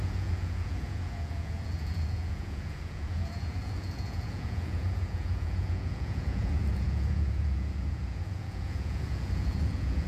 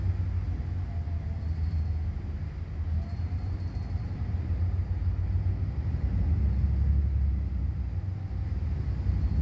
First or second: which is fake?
first